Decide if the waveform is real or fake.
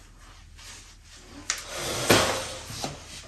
real